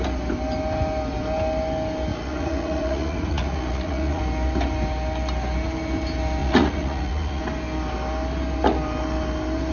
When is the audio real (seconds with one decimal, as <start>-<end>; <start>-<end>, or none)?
0.0-2.1; 4.2-6.4; 7.4-9.7